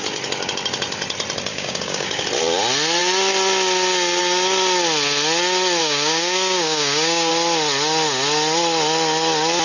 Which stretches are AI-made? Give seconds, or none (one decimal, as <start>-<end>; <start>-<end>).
1.5-2.2; 5.8-7.3